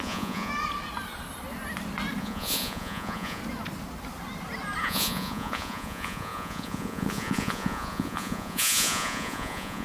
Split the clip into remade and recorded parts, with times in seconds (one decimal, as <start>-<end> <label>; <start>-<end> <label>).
0.0-0.5 remade; 0.5-2.2 recorded; 2.2-3.4 remade; 3.4-4.8 recorded; 4.8-9.8 remade

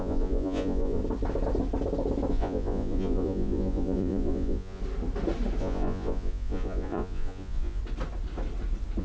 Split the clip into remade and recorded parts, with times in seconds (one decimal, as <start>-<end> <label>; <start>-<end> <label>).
0.0-1.0 remade; 1.0-2.3 recorded; 2.3-4.8 remade; 4.8-5.6 recorded; 5.6-7.8 remade; 7.8-9.0 recorded